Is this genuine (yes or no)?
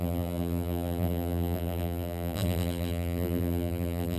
no